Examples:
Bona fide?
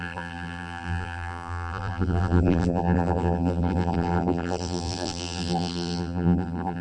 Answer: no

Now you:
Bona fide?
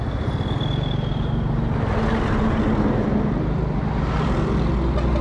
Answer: yes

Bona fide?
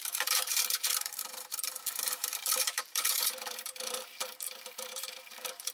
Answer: no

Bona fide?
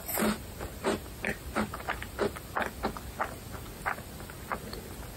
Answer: yes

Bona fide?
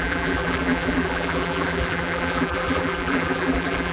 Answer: no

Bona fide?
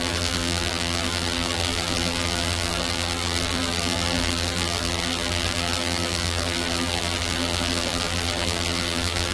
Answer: no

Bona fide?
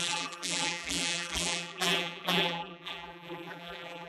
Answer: no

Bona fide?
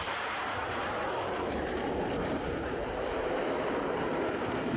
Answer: no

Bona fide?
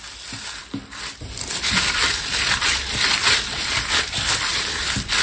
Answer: no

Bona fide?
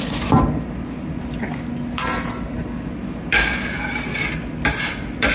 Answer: yes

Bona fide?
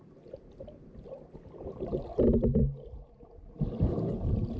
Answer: yes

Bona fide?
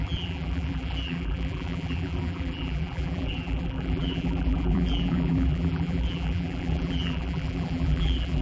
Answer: no